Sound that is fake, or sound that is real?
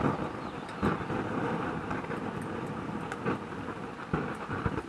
real